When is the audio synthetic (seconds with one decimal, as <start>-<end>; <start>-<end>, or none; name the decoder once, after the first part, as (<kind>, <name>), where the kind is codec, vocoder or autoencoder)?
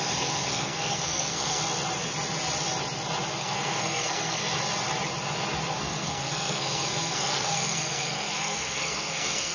0.0-1.6 (codec, SNAC); 3.4-4.4; 5.8-9.5